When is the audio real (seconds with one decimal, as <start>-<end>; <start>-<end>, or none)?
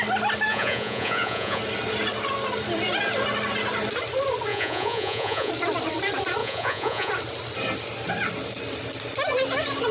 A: 0.0-0.5; 1.6-4.5; 5.5-6.4; 7.1-9.9